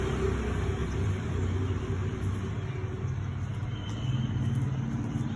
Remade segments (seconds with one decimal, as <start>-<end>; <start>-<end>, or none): 0.8-2.5